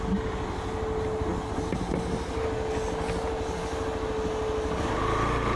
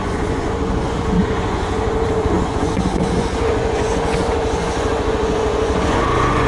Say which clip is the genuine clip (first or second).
first